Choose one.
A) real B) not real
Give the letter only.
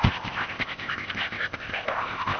B